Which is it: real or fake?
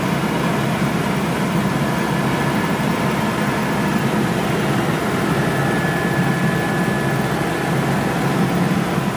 real